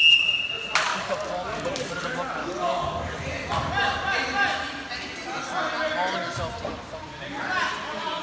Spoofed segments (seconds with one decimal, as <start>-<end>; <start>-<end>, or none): 0.9-1.7; 2.4-3.1